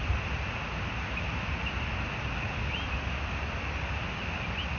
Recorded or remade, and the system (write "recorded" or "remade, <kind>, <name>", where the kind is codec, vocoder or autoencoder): recorded